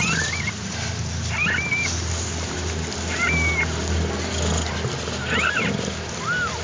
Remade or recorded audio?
recorded